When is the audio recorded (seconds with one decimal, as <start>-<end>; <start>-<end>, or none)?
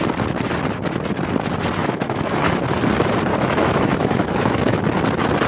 0.0-1.8; 2.5-3.3; 4.8-5.5